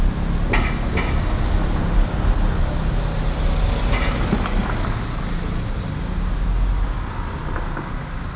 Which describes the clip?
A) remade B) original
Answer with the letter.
B